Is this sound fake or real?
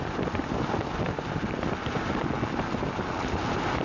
real